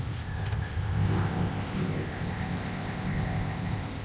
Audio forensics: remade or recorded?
remade